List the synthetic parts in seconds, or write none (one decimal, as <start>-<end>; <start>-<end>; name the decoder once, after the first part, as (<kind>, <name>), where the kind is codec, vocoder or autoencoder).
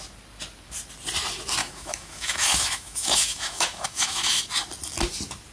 1.6-4.4 (autoencoder, DAC-VAE)